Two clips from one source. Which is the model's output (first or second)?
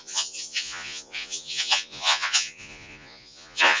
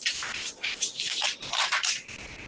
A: first